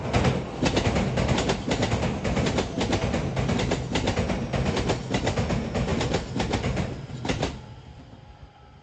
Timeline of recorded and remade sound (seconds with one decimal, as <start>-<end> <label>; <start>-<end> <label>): 0.0-5.9 recorded; 5.9-8.1 remade; 8.1-8.8 recorded